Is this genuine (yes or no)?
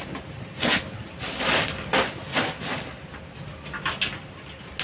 yes